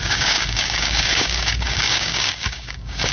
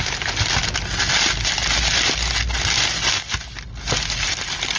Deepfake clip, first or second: first